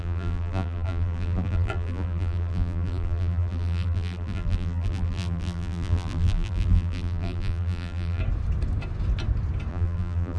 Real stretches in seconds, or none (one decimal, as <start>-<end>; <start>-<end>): 8.2-9.7